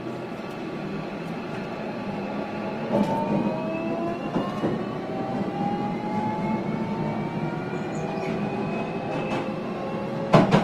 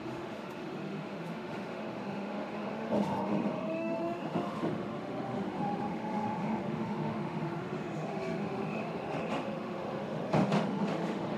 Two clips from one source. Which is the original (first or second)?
first